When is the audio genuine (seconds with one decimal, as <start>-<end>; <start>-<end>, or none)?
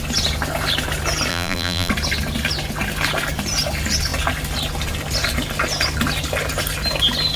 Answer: 0.0-1.3; 1.9-7.4